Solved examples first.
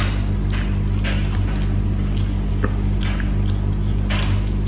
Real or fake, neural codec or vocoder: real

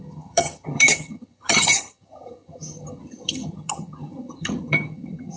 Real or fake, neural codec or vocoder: fake, vocoder, HiFi-GAN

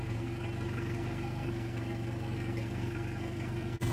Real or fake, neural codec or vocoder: fake, codec, SNAC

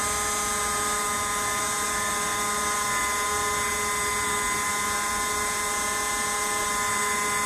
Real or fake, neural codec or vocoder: real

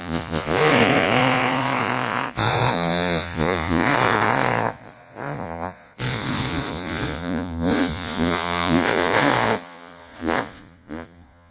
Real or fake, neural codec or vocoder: fake, vocoder, Vocos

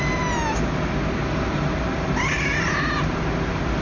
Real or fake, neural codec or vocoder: real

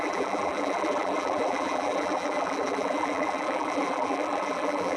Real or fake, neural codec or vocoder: fake, vocoder, BigVGAN v2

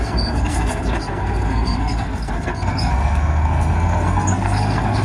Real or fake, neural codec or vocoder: fake, codec, SNAC